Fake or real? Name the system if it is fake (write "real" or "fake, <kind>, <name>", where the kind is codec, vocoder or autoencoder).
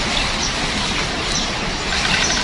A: fake, vocoder, BigVGAN v2